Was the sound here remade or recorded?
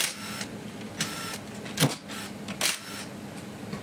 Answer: recorded